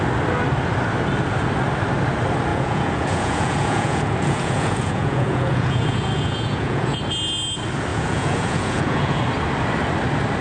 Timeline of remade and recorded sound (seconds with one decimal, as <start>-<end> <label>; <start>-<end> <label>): 0.0-2.5 recorded; 2.5-7.0 remade; 7.0-7.9 recorded; 7.9-9.2 remade; 9.2-10.4 recorded